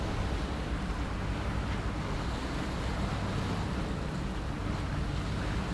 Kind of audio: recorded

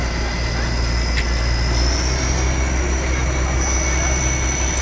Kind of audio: recorded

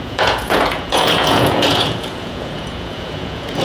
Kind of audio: remade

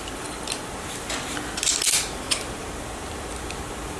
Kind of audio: recorded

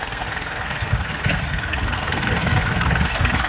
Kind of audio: remade